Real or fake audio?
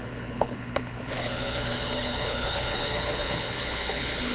fake